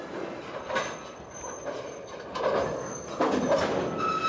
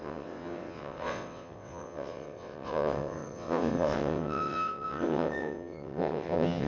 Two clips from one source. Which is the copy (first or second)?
second